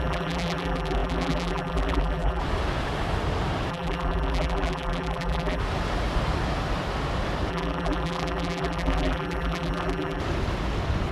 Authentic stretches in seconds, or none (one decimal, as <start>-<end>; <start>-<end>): 2.4-3.7; 5.6-7.5; 10.2-11.1